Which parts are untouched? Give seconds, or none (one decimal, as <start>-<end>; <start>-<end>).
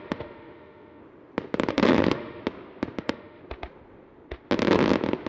1.0-1.7; 2.4-3.0; 3.4-5.3